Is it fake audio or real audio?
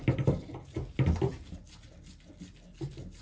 real